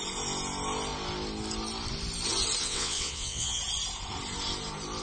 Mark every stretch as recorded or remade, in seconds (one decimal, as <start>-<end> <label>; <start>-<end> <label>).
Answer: 0.0-2.6 recorded; 2.6-3.6 remade; 3.6-5.0 recorded